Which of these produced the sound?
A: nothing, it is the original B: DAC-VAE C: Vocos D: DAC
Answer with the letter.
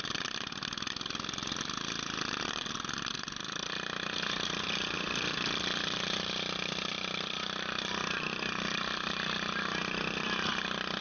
A